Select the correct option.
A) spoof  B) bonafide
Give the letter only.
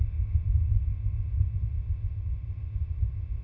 A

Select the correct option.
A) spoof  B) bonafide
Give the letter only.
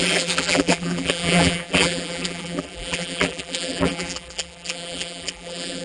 A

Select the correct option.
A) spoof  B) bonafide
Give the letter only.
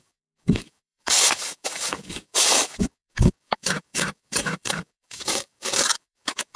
A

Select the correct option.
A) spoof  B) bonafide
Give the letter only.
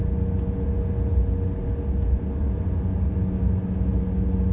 B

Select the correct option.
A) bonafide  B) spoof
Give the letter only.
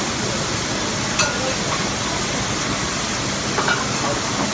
A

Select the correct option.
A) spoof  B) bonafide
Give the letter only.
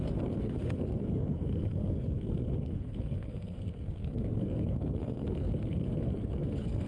A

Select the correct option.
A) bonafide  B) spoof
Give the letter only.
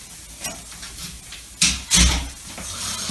A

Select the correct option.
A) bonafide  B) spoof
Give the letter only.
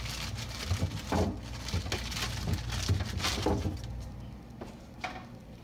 A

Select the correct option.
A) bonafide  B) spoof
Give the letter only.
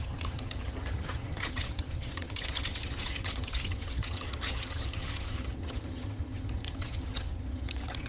B